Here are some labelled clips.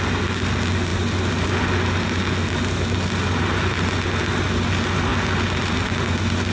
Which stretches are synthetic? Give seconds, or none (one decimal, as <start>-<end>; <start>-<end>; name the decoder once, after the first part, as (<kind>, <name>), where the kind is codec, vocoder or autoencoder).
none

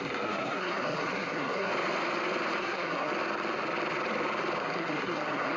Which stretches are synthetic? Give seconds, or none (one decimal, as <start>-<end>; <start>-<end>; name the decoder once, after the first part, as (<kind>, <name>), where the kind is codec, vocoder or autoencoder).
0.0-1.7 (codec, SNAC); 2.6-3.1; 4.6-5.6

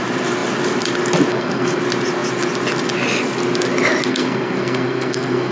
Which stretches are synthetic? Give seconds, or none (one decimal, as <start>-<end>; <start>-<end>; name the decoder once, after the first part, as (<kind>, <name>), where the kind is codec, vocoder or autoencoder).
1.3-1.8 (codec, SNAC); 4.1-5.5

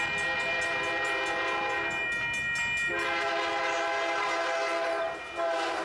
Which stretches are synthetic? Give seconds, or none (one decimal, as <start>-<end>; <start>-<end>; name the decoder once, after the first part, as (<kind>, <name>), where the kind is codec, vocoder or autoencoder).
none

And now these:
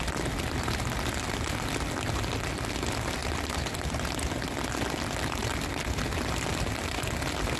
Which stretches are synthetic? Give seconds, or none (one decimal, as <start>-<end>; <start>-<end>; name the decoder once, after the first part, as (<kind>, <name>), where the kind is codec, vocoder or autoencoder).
none